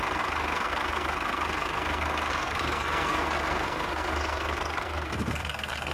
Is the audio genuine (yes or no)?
no